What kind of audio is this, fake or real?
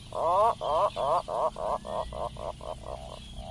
real